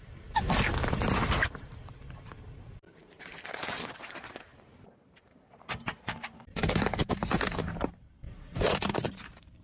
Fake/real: fake